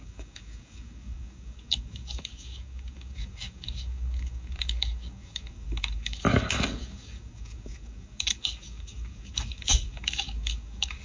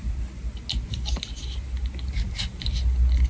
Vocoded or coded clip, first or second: first